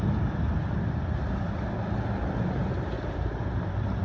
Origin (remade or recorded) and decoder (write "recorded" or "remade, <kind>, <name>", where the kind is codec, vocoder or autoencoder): recorded